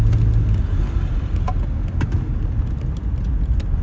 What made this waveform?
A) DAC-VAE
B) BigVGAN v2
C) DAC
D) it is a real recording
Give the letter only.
D